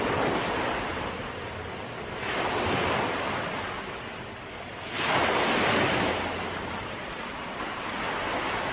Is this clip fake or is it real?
real